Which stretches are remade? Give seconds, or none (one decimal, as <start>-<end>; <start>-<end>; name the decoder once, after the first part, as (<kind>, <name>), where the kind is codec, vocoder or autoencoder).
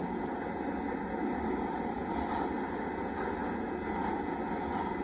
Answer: none